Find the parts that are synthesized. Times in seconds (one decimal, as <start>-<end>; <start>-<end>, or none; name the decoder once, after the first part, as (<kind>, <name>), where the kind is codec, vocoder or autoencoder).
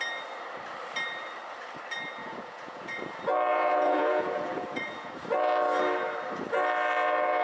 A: 2.2-3.1 (vocoder, Vocos); 3.5-5.1